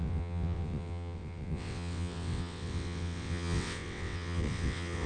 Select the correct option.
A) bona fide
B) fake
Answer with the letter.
B